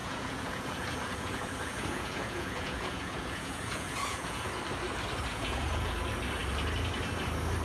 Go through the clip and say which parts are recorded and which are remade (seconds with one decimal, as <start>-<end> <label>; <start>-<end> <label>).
0.0-4.6 remade; 4.6-5.3 recorded; 5.3-5.9 remade; 5.9-7.6 recorded